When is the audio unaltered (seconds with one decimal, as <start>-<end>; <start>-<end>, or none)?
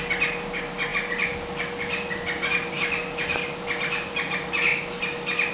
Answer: 0.0-0.9; 4.1-4.7